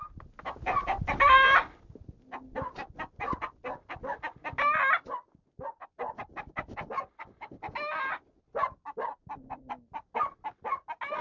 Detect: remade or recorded recorded